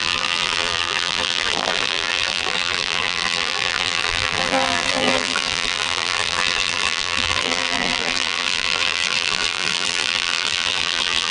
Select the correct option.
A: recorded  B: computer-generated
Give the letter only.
B